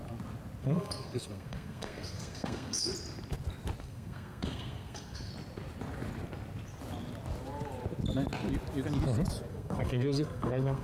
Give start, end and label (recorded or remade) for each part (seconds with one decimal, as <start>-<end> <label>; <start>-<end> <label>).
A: 0.0-0.6 recorded; 0.6-2.9 remade; 2.9-3.8 recorded; 3.8-5.3 remade; 5.3-9.5 recorded; 9.5-10.8 remade